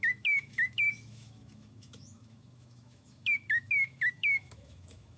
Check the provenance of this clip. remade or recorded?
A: remade